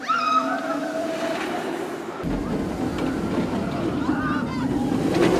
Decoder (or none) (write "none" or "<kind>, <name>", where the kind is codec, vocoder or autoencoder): none